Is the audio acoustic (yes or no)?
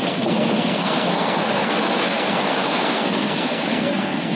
no